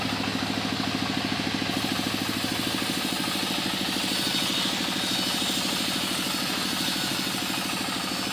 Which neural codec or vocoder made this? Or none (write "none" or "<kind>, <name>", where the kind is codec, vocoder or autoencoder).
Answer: none